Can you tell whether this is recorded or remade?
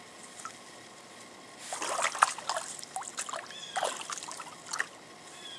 recorded